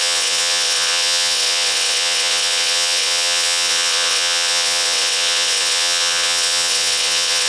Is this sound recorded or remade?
remade